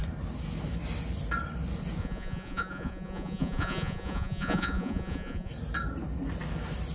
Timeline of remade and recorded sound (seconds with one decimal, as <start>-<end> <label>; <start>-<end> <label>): 0.0-2.0 recorded; 2.0-5.5 remade; 5.5-6.9 recorded